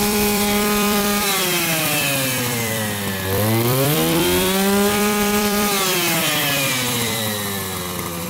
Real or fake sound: fake